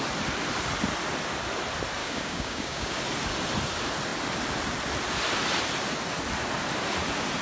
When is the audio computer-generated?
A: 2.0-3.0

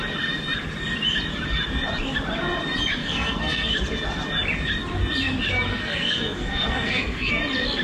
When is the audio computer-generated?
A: 3.0-3.7; 5.7-7.3

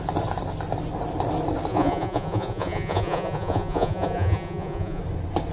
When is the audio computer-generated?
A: 1.7-5.0